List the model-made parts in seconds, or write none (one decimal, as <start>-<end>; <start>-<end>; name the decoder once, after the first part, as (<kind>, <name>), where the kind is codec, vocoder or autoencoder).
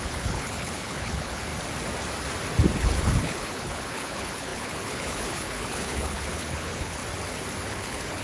0.0-1.5 (codec, HILCodec); 2.8-7.0; 7.7-8.2